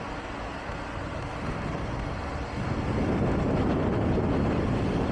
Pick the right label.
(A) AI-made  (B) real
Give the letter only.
B